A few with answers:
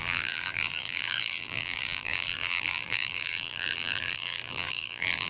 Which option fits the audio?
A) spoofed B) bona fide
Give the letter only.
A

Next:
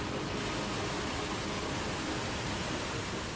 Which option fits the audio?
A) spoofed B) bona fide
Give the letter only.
B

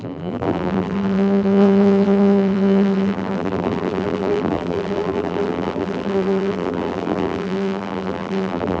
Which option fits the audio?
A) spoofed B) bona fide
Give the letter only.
A